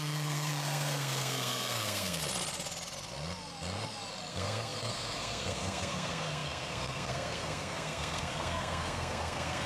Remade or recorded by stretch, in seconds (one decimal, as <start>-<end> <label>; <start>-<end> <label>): 0.0-2.2 remade; 2.2-4.3 recorded; 4.3-9.7 remade